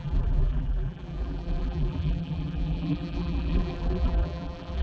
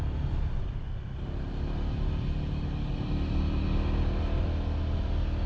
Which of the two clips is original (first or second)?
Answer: second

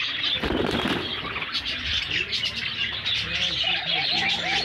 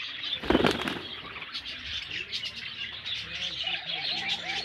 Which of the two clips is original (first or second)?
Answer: first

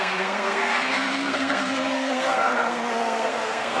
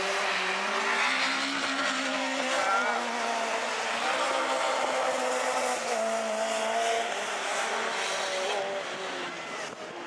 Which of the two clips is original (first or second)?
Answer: second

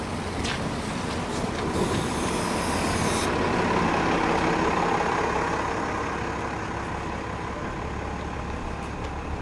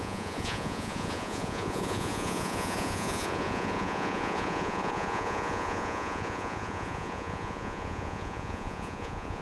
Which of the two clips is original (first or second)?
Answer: first